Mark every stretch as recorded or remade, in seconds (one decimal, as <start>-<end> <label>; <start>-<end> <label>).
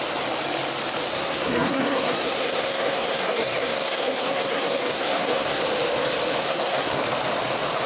0.0-1.1 recorded; 1.1-5.6 remade; 5.6-6.4 recorded; 6.4-7.0 remade; 7.0-7.9 recorded